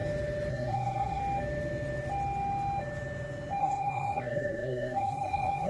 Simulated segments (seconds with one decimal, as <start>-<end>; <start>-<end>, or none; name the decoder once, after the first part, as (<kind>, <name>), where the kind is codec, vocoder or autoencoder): 0.5-1.2 (codec, SNAC); 3.6-5.7